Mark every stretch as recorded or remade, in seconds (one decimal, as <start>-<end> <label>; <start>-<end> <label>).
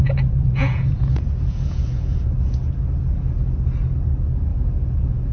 0.0-2.6 remade; 2.6-4.5 recorded; 4.5-5.3 remade